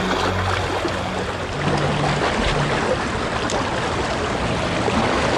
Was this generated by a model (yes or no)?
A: no